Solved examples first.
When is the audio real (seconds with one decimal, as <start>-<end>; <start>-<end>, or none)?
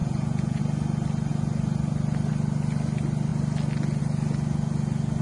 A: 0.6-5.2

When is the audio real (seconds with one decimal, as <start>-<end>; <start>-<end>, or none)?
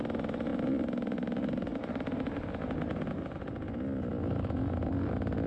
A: 0.0-0.5; 2.5-5.5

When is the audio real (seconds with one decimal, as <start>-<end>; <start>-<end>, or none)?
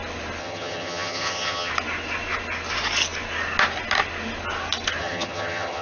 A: 0.0-0.4; 1.7-5.0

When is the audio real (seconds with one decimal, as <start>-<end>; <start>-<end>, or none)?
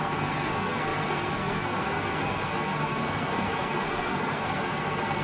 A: none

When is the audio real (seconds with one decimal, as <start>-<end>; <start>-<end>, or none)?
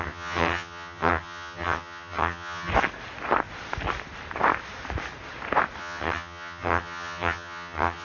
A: 2.7-5.8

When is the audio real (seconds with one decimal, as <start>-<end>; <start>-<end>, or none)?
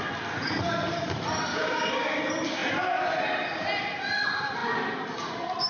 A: 0.0-1.5; 2.2-5.7